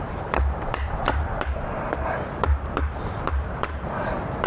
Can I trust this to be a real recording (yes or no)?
no